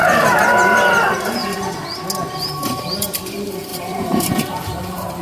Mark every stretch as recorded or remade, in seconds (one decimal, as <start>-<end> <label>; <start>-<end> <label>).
0.0-2.4 recorded; 2.4-5.2 remade